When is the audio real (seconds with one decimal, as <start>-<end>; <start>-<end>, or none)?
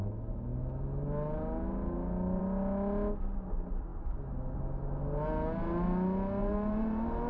0.0-6.4